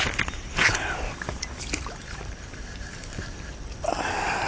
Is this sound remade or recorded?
remade